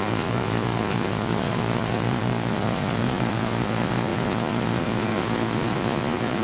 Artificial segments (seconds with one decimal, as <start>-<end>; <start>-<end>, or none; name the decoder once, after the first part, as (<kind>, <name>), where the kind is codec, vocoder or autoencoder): 0.0-6.4 (vocoder, Vocos)